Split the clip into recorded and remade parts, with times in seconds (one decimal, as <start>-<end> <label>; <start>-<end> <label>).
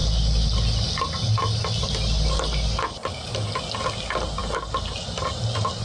0.0-5.8 recorded